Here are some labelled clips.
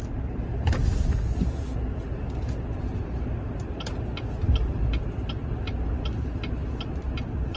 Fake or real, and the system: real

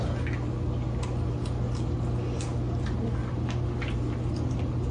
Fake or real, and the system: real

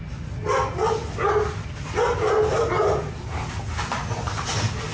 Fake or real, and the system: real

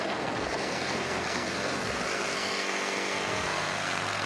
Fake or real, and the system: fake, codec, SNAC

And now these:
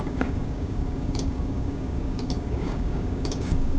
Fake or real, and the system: fake, codec, DAC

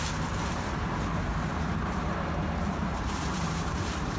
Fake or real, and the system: fake, vocoder, BigVGAN v2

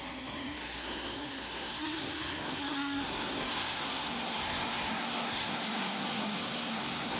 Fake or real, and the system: fake, codec, SNAC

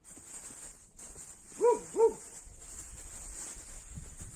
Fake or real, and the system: real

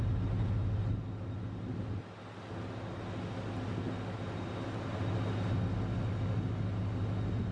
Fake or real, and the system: real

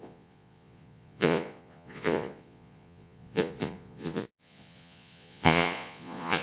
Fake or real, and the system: fake, vocoder, Vocos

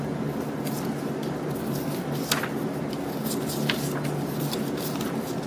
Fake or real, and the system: real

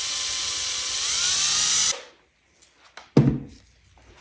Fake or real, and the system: real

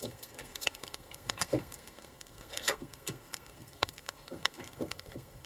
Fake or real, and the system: fake, codec, SNAC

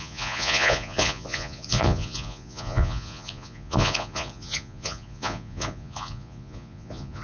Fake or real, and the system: fake, vocoder, Vocos